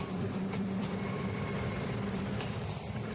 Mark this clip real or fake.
fake